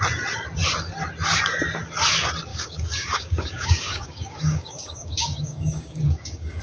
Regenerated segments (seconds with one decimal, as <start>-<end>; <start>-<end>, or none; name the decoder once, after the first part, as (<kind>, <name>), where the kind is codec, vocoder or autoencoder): 2.5-6.6 (codec, DAC)